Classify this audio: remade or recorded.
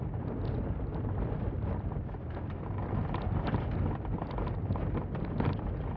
recorded